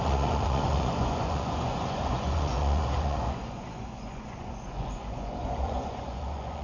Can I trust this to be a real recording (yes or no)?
no